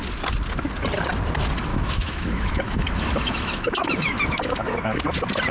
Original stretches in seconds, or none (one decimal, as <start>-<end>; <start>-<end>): 0.0-1.7; 5.0-5.5